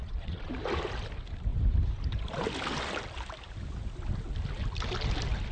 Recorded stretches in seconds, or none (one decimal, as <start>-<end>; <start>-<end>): 0.5-5.5